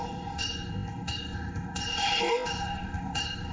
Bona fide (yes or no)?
no